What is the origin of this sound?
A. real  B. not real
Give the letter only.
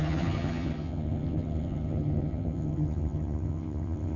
B